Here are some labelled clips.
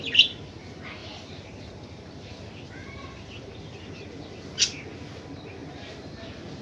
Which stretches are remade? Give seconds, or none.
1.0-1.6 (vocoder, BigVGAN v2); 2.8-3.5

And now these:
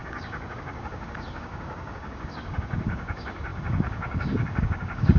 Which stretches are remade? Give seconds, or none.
0.0-5.2 (codec, DAC)

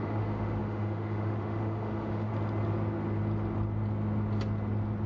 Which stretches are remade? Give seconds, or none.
0.0-2.3 (autoencoder, DAC-VAE)

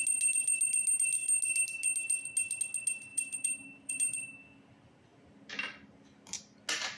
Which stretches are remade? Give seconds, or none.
3.1-3.9 (vocoder, BigVGAN v2); 5.1-6.4

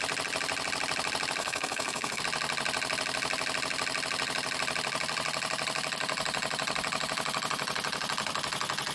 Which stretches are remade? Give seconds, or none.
1.4-2.2 (codec, SNAC)